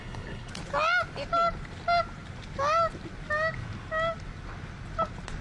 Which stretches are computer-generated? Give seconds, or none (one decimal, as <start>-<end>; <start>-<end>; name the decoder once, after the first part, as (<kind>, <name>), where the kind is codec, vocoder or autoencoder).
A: 0.0-0.5 (codec, HILCodec)